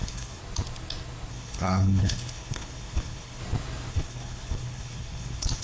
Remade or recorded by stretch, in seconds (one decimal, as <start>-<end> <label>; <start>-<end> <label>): 0.0-0.4 remade; 0.4-1.3 recorded; 1.3-3.4 remade; 3.4-3.9 recorded; 3.9-5.6 remade